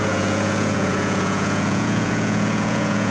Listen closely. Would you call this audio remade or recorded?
remade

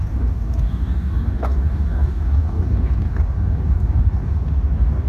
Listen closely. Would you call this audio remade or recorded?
remade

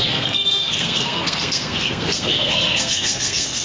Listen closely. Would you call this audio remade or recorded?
remade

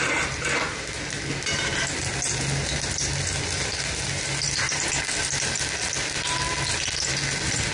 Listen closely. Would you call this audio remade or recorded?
recorded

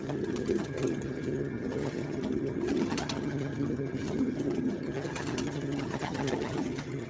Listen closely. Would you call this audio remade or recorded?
remade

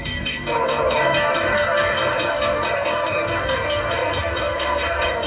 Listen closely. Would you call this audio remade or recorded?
remade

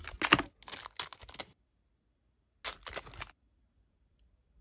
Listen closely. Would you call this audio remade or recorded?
recorded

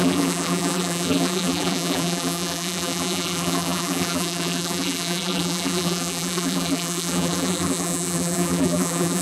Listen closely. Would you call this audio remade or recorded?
remade